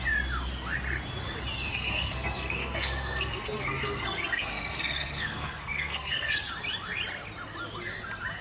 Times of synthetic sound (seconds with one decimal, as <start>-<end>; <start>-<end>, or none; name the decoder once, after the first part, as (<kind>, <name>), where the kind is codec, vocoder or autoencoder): 1.7-6.5 (codec, SNAC)